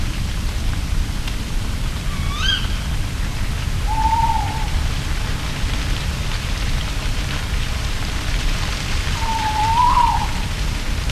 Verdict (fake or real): fake